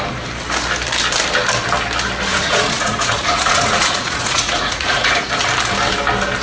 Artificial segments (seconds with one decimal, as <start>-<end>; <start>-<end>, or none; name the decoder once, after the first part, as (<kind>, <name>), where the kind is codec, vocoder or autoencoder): 2.3-5.3 (vocoder, Vocos)